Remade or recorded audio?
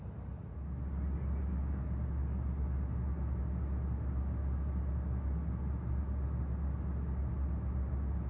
recorded